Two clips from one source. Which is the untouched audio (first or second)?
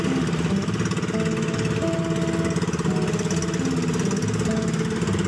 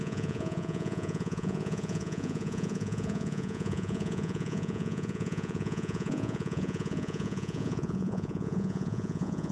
first